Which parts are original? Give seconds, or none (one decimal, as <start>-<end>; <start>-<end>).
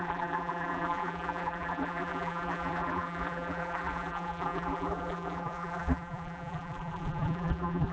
none